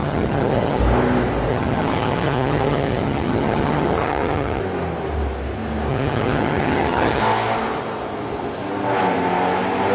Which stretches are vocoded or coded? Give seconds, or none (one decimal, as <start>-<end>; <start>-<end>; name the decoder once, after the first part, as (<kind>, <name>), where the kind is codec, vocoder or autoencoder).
0.0-0.8 (vocoder, HiFi-GAN); 1.5-4.6; 5.9-7.2